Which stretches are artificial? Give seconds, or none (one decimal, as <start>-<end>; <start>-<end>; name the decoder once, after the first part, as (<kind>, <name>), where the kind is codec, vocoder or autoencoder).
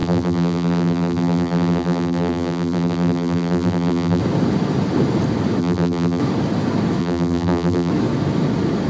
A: 0.0-4.2 (vocoder, BigVGAN v2); 5.6-6.2; 7.0-7.9